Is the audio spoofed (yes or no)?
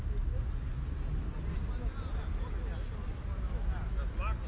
no